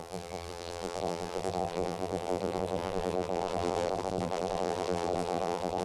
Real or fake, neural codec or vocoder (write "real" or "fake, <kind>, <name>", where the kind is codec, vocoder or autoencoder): fake, vocoder, BigVGAN v2